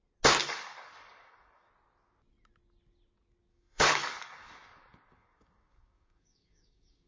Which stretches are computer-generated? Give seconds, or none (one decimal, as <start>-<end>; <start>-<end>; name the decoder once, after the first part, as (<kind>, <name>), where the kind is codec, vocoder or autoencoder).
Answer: 0.4-1.7 (codec, DAC); 3.5-7.1